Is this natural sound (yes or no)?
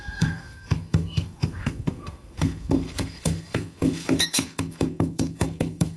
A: no